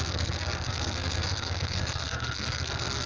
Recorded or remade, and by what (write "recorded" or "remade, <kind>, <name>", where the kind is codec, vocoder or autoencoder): remade, codec, SNAC